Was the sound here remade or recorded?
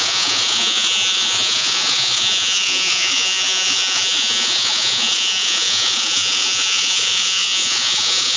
remade